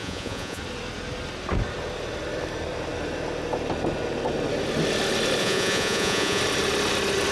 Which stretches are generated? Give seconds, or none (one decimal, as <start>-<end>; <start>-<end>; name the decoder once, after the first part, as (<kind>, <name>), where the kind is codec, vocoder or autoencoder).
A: 0.0-0.6 (vocoder, Vocos); 5.4-6.4